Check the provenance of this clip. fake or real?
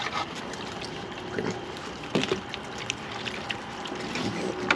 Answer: real